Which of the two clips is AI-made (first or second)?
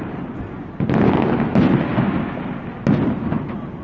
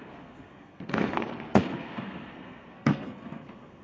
second